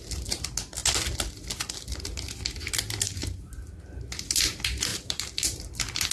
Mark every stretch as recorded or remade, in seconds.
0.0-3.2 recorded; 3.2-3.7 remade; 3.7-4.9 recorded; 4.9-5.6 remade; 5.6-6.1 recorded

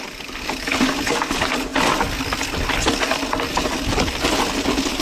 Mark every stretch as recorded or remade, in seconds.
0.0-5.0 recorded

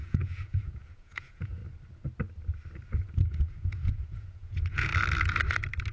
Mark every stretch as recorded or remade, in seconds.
0.0-1.6 remade; 1.6-3.1 recorded; 3.1-4.9 remade; 4.9-5.9 recorded

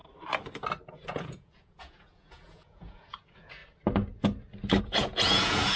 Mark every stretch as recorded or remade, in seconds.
0.0-0.9 recorded; 0.9-3.6 remade; 3.6-4.8 recorded; 4.8-5.8 remade